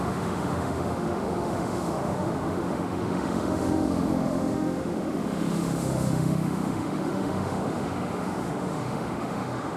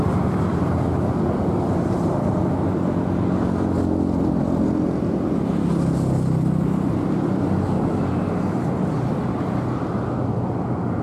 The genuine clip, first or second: second